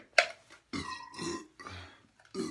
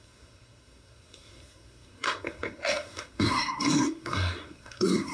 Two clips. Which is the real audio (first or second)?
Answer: first